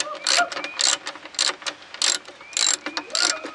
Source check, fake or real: real